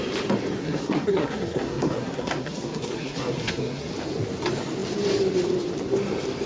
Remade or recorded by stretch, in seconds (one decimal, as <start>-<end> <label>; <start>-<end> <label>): 0.0-0.6 recorded; 0.6-3.9 remade; 3.9-6.5 recorded